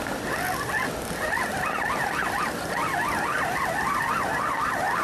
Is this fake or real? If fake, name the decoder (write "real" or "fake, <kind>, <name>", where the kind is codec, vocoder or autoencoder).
real